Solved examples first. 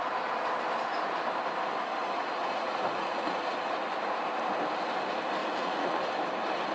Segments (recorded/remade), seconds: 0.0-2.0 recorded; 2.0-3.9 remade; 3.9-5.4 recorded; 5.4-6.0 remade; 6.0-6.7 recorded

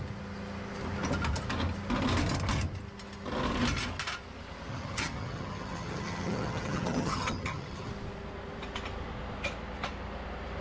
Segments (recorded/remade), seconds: 0.0-4.7 recorded; 4.7-7.9 remade; 7.9-10.6 recorded

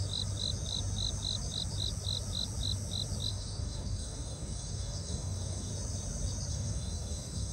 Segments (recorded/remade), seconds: 0.0-3.3 recorded; 3.3-5.7 remade; 5.7-6.5 recorded; 6.5-7.5 remade

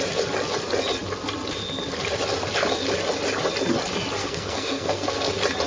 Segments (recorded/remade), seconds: 0.0-4.2 recorded; 4.2-5.3 remade; 5.3-5.7 recorded

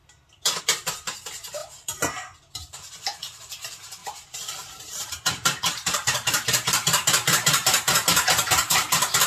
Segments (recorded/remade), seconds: 0.0-4.0 recorded; 4.0-9.3 remade

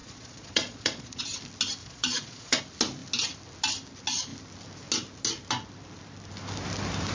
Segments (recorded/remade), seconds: 0.0-1.2 remade; 1.2-1.8 recorded; 1.8-2.6 remade; 2.6-7.1 recorded

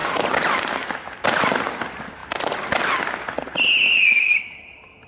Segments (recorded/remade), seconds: 0.0-5.1 recorded